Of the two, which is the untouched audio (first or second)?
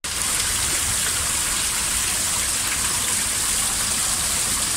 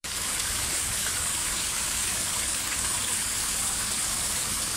first